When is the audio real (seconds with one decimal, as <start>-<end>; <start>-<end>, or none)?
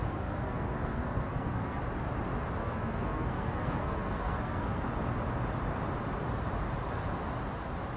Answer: 1.8-2.6; 4.8-8.0